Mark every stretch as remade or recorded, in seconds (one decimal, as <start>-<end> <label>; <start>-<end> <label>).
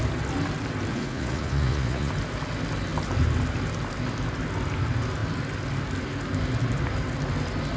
0.0-0.9 recorded; 0.9-2.1 remade; 2.1-7.8 recorded